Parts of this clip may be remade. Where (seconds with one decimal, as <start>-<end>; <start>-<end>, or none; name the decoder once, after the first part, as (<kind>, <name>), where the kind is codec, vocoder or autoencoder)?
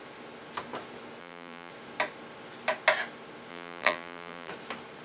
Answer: 1.2-1.7 (vocoder, BigVGAN v2); 3.5-4.5